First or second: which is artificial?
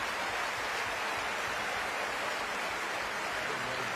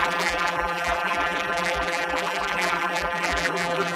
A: second